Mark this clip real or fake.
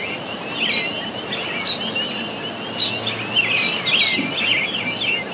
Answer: real